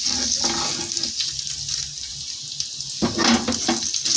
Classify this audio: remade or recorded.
recorded